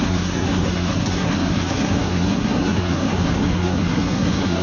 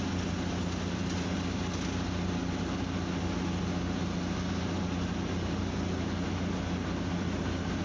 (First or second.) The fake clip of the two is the first